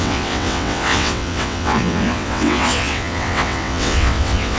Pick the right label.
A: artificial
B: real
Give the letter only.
A